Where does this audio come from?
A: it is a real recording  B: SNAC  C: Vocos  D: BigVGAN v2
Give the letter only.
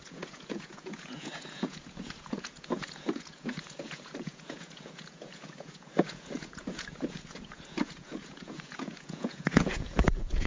C